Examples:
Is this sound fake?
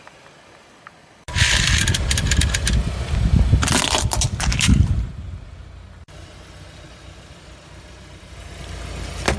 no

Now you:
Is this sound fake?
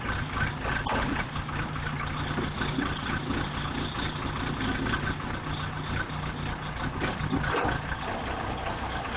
no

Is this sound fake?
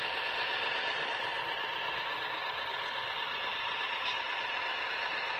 yes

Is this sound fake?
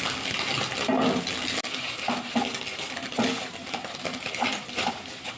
no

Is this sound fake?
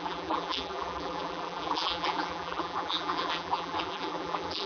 yes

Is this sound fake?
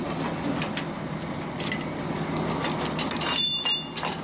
no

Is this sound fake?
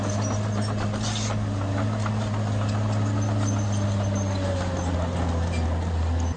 no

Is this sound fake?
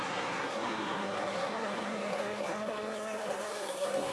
yes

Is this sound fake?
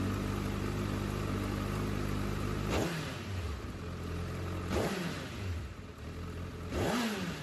no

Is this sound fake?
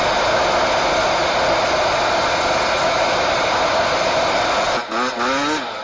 no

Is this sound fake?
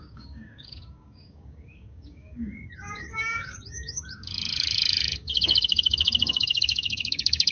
yes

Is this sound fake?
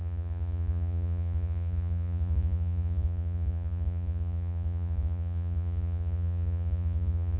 yes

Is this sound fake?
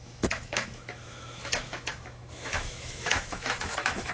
yes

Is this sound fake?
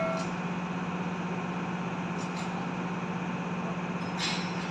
no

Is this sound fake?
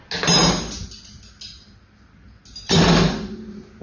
no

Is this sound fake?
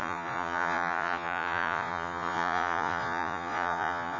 yes